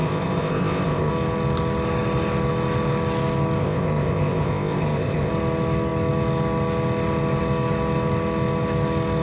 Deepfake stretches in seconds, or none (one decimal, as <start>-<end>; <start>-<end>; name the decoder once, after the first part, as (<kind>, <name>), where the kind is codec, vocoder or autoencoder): 0.0-1.1 (codec, ZipCodec); 3.6-5.3